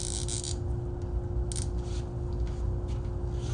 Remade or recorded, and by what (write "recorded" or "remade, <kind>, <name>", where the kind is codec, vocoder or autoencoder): recorded